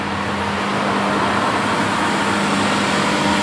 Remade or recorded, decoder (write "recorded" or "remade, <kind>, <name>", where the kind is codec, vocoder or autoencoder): recorded